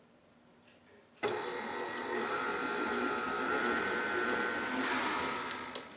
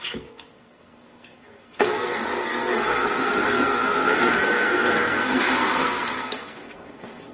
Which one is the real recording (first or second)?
first